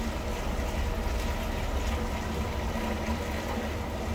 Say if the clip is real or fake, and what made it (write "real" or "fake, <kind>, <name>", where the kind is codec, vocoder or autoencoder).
real